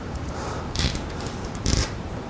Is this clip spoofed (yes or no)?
yes